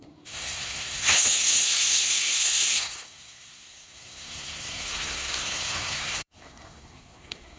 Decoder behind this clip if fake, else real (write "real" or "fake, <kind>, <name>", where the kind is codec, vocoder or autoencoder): fake, codec, SNAC